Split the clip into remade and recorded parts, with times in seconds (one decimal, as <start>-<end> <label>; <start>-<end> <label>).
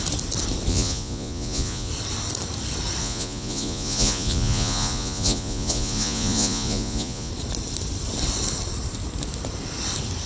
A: 0.0-0.7 recorded; 0.7-1.9 remade; 1.9-3.0 recorded; 3.0-7.3 remade; 7.3-10.3 recorded